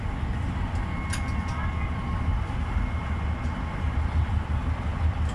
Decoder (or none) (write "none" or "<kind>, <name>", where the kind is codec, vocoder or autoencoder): none